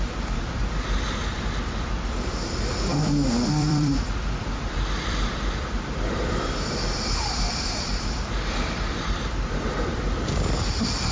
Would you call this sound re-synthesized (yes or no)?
yes